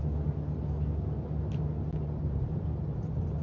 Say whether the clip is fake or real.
real